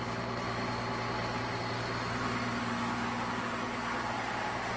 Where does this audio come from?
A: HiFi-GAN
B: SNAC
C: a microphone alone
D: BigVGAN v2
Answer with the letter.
C